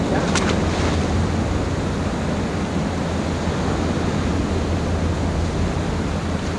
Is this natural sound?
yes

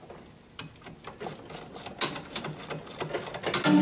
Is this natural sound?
yes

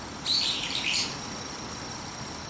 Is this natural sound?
yes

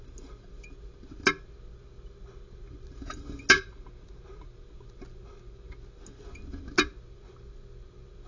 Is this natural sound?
yes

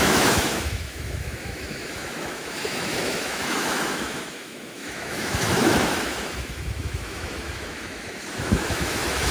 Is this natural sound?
no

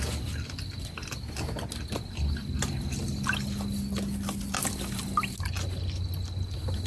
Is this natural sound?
yes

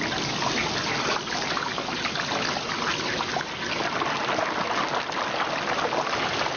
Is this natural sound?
yes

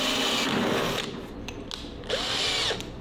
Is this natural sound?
yes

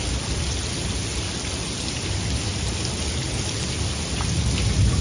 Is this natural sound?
yes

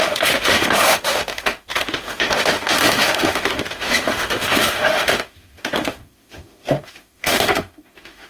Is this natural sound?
no